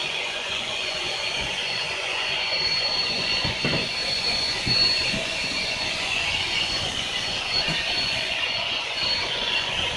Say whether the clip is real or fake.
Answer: fake